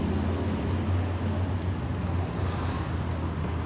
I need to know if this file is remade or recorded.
recorded